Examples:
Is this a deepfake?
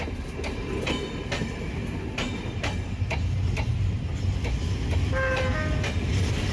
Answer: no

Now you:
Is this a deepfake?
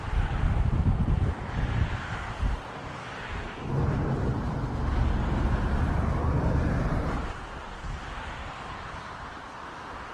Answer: no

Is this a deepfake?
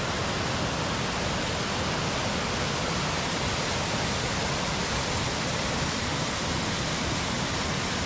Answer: no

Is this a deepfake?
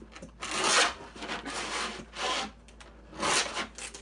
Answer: no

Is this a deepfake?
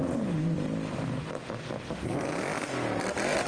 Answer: no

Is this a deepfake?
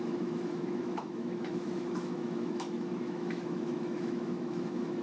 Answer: yes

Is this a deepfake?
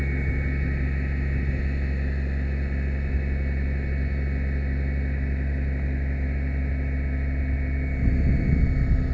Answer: no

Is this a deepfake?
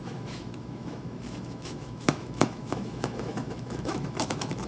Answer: yes